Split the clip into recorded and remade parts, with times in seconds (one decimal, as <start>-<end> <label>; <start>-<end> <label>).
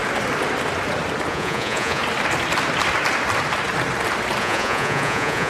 0.0-1.3 recorded; 1.3-2.0 remade; 2.0-4.4 recorded; 4.4-5.5 remade